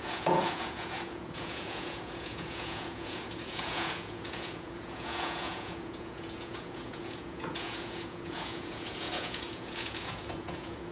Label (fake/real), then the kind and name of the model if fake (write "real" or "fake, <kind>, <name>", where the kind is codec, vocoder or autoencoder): fake, vocoder, Vocos